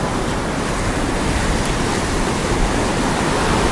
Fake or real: fake